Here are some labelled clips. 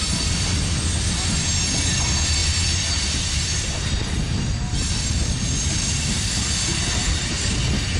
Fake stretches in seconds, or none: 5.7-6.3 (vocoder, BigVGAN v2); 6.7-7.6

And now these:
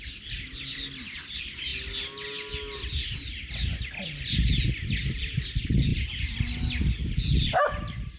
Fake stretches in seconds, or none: none

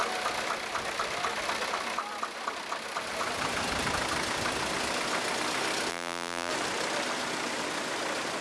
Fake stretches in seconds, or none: 5.9-6.5 (vocoder, BigVGAN v2)